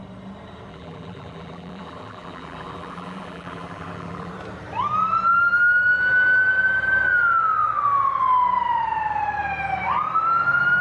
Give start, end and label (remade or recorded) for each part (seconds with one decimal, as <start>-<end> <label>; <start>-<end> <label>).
0.0-0.7 recorded; 0.7-4.3 remade; 4.3-10.8 recorded